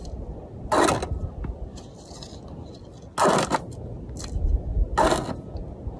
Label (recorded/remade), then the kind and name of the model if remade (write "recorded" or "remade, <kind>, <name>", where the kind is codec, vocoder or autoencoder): recorded